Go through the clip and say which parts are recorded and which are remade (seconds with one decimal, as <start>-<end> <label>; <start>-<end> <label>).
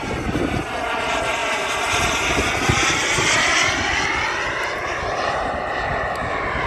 0.0-6.7 recorded